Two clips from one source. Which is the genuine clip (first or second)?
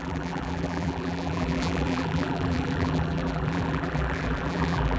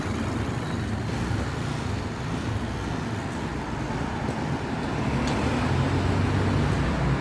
second